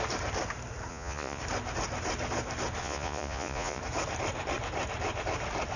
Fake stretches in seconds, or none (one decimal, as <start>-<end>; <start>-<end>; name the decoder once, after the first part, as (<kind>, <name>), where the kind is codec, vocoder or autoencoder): 0.9-1.4 (vocoder, Vocos); 2.8-3.8